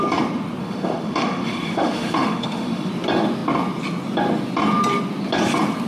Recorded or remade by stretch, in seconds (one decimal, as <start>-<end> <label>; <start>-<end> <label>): 0.0-0.6 recorded; 0.6-2.9 remade; 2.9-5.9 recorded